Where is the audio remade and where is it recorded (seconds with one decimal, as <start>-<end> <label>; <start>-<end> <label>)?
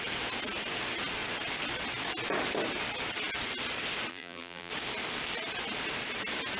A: 0.0-4.1 recorded; 4.1-4.7 remade; 4.7-6.6 recorded